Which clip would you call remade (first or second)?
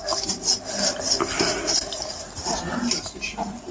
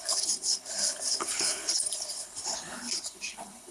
second